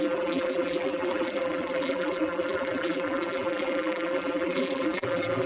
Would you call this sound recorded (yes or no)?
no